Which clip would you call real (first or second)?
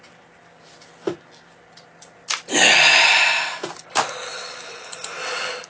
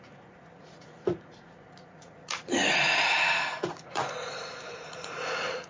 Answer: first